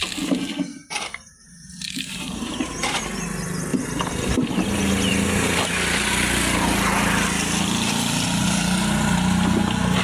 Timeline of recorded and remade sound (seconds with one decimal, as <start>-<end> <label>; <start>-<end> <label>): 0.0-0.7 recorded; 0.7-3.0 remade; 3.0-3.7 recorded; 3.7-4.3 remade; 4.3-10.0 recorded